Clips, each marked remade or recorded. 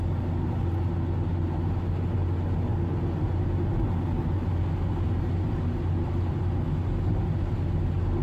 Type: recorded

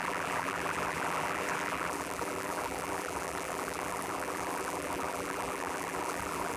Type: remade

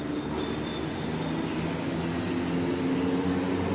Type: recorded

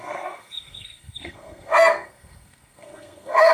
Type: remade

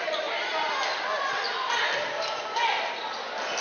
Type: recorded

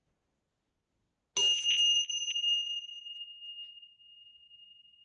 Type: recorded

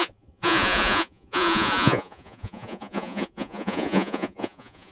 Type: remade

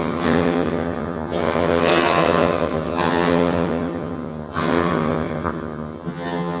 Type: remade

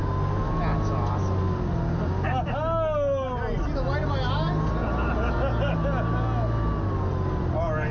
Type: recorded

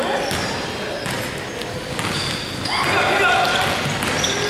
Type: recorded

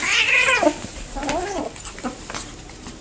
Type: recorded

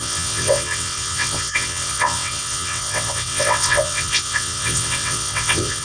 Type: remade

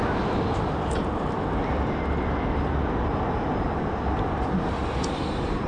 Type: recorded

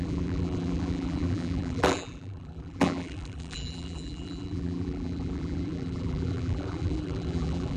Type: remade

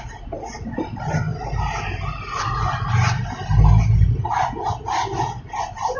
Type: recorded